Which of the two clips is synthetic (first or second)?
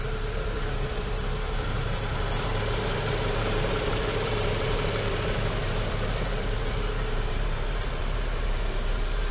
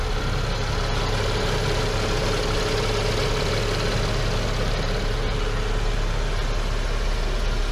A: first